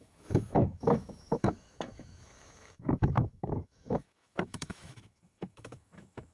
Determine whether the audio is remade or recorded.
remade